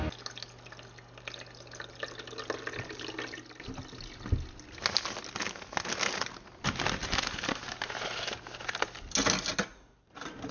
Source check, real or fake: real